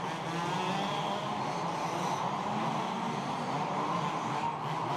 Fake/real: real